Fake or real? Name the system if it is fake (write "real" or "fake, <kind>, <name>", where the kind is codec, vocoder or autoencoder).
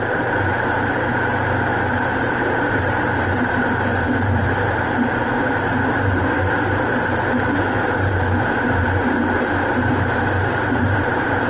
fake, vocoder, BigVGAN v2